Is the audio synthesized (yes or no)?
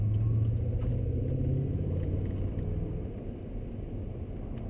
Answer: no